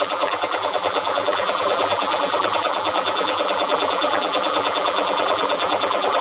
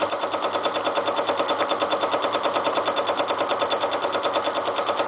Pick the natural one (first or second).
second